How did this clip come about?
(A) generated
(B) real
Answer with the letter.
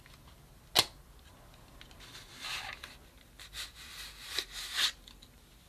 B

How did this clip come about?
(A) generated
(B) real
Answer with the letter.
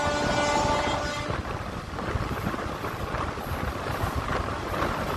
B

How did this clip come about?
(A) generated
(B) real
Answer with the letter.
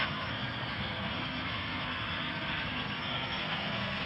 A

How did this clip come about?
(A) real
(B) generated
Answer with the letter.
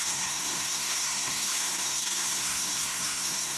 B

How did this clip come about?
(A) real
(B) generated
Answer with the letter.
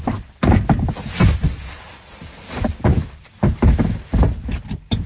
A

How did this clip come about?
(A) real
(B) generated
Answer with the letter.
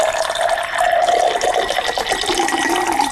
A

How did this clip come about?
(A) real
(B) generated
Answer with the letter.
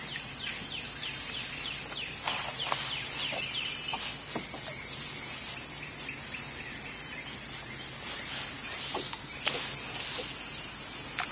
A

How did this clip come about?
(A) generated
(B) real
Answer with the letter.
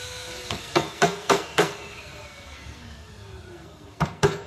A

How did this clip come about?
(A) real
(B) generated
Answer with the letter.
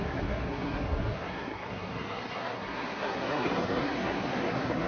B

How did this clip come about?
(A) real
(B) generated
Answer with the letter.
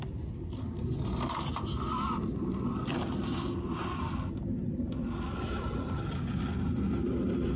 A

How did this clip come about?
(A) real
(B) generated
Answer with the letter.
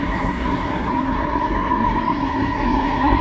B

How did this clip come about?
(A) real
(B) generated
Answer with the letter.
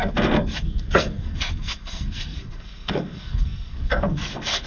B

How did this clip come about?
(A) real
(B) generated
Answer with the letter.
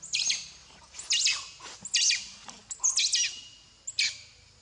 A